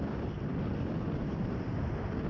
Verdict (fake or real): fake